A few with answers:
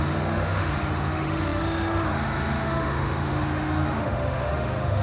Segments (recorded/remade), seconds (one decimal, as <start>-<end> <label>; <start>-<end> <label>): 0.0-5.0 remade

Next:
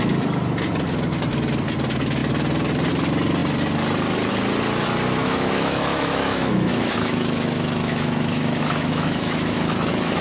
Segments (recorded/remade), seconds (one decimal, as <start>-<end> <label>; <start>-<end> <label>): 0.0-5.2 recorded; 5.2-10.2 remade

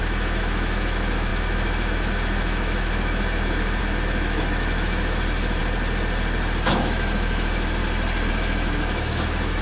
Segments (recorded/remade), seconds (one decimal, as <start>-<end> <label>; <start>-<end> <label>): 0.0-5.6 remade; 5.6-6.7 recorded; 6.7-7.8 remade; 7.8-8.3 recorded; 8.3-9.6 remade

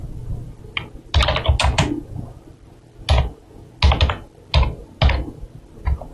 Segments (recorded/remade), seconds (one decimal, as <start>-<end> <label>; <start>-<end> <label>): 0.0-6.1 recorded

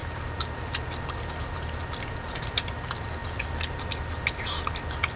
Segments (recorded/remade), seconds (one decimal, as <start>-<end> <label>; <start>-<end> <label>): 0.0-5.2 recorded

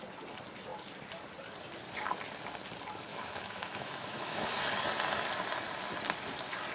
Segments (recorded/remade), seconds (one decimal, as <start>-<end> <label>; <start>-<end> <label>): 0.0-3.1 recorded; 3.1-4.5 remade; 4.5-6.7 recorded

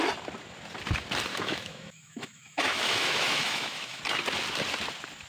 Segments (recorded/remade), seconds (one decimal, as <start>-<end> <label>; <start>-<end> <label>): 0.0-1.3 recorded; 1.3-4.0 remade; 4.0-5.3 recorded

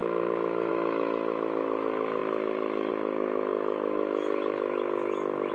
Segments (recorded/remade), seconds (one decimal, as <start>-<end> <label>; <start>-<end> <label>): 0.0-5.5 remade